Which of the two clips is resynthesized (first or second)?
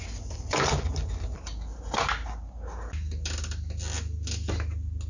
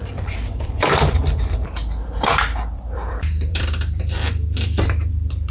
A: second